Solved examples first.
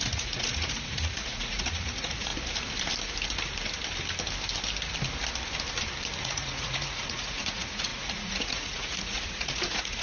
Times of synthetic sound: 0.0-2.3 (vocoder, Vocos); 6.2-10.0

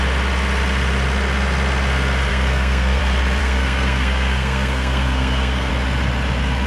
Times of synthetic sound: 2.3-3.0 (codec, SNAC); 3.4-5.7

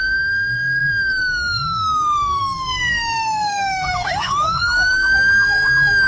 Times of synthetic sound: 0.0-6.1 (autoencoder, DAC-VAE)

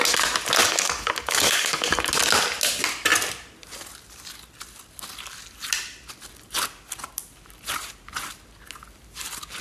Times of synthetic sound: 0.6-2.1 (codec, DAC)

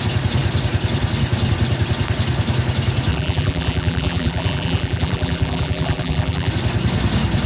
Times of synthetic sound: 3.1-6.5 (vocoder, BigVGAN v2)

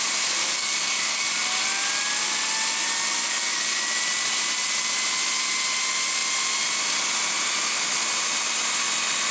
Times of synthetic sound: 0.4-1.3 (codec, DAC); 3.2-3.9

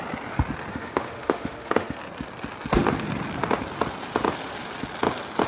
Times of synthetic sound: 0.7-2.0 (autoencoder, DAC-VAE)